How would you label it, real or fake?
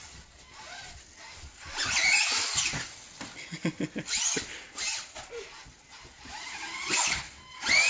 real